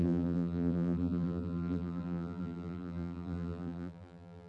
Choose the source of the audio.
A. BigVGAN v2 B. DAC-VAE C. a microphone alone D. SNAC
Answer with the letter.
A